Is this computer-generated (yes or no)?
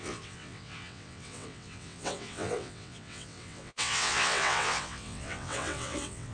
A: yes